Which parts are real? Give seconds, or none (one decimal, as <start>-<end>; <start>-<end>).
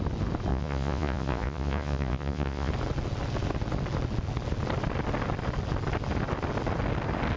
0.0-0.5; 2.7-7.4